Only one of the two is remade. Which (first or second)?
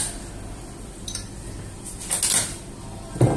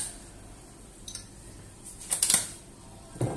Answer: second